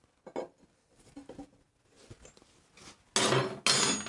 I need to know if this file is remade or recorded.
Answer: recorded